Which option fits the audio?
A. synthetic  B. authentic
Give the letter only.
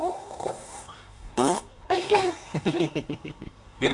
A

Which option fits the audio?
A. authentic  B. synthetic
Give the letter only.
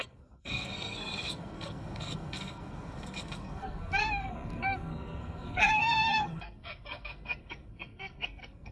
B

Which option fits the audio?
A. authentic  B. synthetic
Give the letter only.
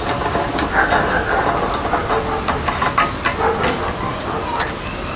A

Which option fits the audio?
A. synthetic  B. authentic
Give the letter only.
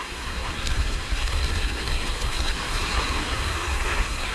A